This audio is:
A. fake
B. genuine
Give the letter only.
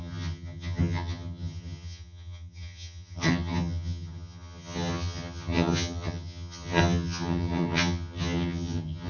A